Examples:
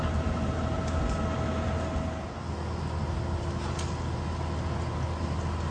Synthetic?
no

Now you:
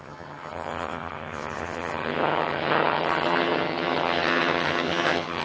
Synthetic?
yes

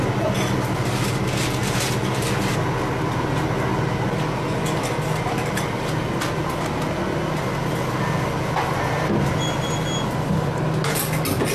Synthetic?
no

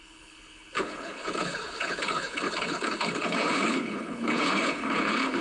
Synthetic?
yes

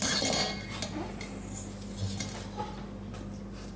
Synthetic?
no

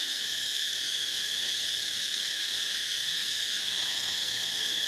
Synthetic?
yes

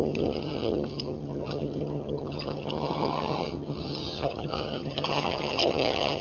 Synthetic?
yes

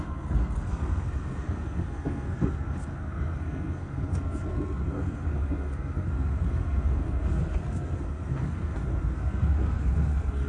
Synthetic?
yes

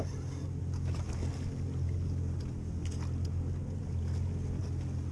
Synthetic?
no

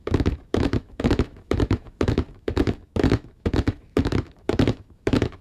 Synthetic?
yes